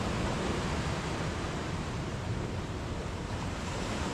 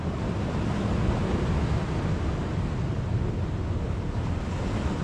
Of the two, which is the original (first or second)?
second